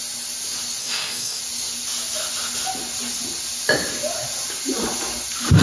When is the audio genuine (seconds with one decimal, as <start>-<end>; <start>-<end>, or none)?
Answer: 0.0-0.8; 1.4-5.6